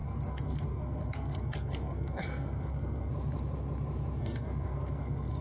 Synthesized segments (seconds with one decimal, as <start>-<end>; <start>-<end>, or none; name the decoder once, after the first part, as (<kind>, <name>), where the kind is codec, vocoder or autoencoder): 0.0-3.1 (codec, SNAC); 4.2-5.4